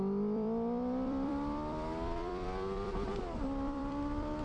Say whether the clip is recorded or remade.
remade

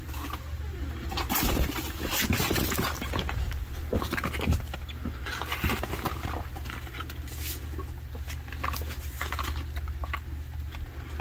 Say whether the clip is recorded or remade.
recorded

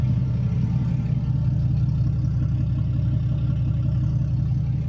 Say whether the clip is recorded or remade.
recorded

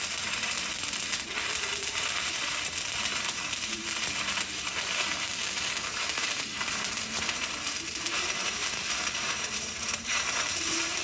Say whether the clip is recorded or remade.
remade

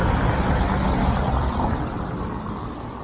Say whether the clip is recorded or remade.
recorded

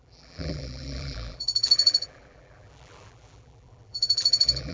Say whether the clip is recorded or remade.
remade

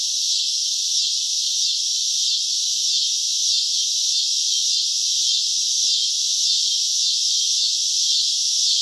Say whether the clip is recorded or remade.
recorded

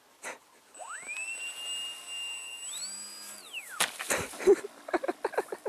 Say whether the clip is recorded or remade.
recorded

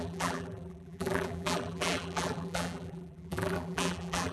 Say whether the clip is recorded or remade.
remade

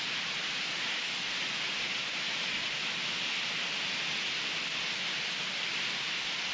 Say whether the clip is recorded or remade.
recorded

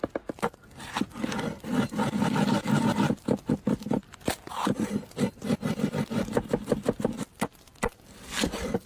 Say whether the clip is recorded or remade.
recorded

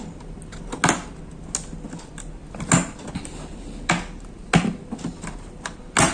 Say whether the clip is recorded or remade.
recorded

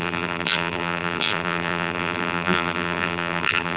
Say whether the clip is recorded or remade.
remade